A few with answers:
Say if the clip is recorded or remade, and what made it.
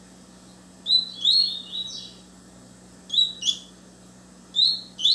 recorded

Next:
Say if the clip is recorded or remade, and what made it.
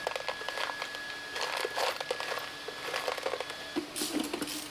recorded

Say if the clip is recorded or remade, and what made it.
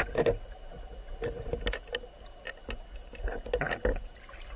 recorded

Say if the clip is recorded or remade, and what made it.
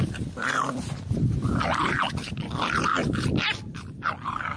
recorded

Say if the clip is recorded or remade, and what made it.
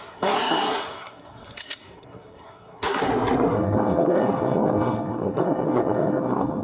remade, codec, SNAC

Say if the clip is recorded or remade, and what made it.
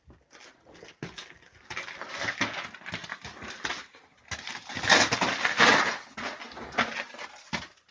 recorded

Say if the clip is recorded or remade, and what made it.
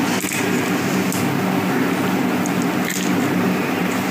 recorded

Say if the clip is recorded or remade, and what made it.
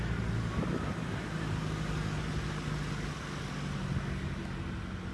recorded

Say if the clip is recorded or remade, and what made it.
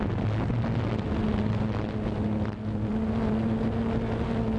recorded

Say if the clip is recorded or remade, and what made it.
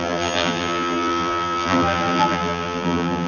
remade, vocoder, BigVGAN v2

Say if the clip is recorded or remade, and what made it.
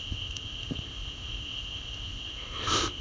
remade, codec, ZipCodec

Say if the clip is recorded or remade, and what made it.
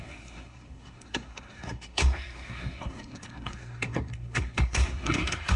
remade, codec, SNAC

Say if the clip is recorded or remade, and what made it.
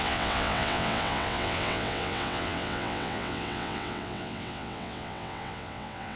remade, vocoder, WaveNeXt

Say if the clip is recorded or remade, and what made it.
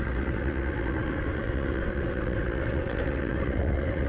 remade, vocoder, WaveNeXt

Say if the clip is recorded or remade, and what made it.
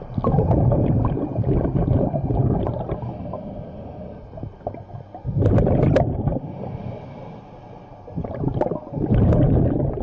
recorded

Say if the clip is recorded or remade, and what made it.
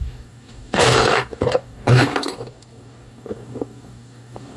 remade, codec, DAC